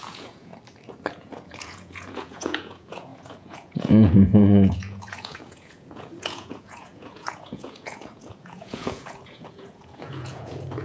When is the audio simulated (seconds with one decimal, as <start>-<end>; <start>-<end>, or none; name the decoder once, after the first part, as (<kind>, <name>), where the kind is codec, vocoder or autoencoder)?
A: 0.0-0.5 (vocoder, Vocos); 1.1-10.8